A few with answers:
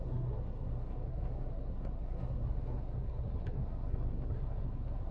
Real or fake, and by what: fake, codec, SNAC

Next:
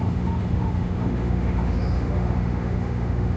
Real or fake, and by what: fake, autoencoder, DAC-VAE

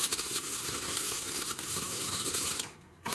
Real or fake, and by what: fake, codec, SNAC